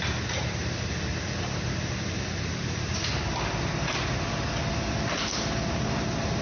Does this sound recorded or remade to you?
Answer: recorded